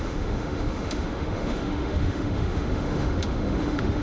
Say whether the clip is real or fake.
fake